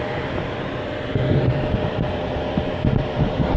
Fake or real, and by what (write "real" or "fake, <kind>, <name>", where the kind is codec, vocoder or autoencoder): fake, vocoder, BigVGAN v2